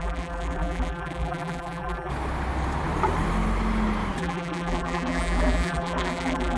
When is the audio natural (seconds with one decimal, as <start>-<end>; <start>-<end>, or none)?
2.1-4.2